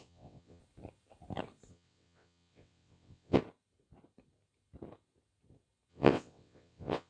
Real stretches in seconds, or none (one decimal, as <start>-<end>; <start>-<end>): 0.6-1.7; 3.4-5.9